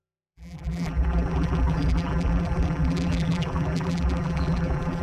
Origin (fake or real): fake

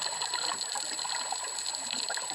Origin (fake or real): real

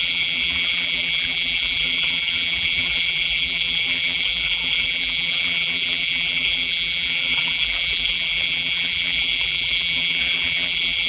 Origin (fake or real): fake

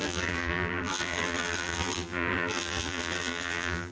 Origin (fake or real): fake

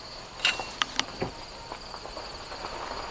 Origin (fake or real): real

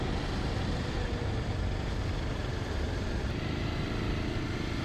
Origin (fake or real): real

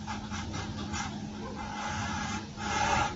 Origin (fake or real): real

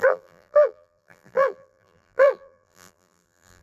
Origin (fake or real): fake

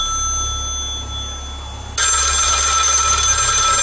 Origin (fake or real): real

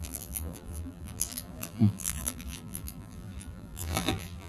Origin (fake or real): fake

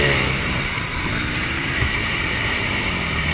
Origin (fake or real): fake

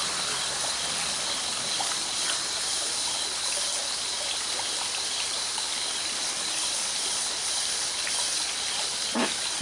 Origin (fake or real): real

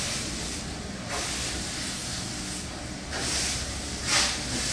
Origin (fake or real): real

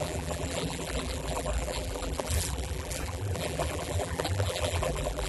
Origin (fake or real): fake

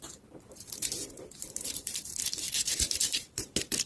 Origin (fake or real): fake